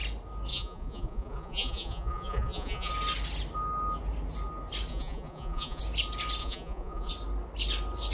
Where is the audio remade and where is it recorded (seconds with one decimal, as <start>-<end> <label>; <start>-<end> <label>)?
0.0-0.5 recorded; 0.5-2.9 remade; 2.9-4.9 recorded; 4.9-5.8 remade; 5.8-6.4 recorded; 6.4-7.1 remade; 7.1-8.1 recorded